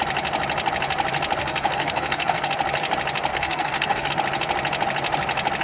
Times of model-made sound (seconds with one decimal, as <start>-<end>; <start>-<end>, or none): 1.4-2.5; 3.3-4.1